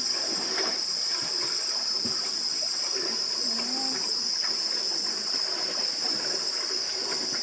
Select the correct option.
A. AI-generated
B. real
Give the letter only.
B